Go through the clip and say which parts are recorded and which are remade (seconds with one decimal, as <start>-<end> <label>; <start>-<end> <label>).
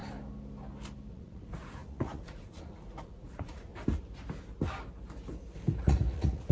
0.0-1.1 recorded; 1.1-3.7 remade; 3.7-5.8 recorded; 5.8-6.5 remade